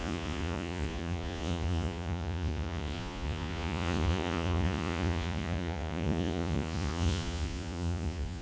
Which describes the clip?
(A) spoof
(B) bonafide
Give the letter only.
A